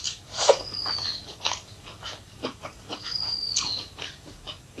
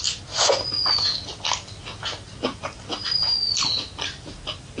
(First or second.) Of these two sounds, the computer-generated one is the first